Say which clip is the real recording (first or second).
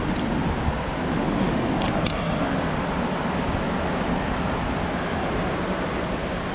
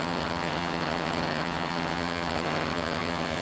first